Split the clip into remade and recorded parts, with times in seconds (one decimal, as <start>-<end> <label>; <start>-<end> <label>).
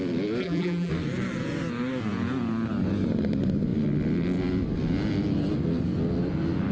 0.0-0.4 recorded; 0.4-0.9 remade; 0.9-6.7 recorded